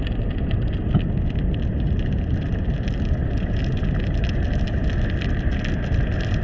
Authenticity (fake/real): real